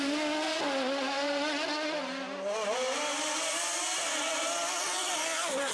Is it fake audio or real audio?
real